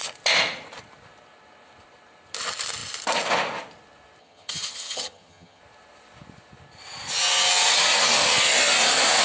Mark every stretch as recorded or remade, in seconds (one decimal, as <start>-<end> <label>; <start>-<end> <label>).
0.0-4.2 recorded; 4.2-5.6 remade; 5.6-9.2 recorded